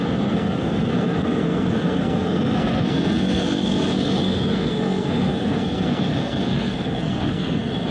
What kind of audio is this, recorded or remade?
remade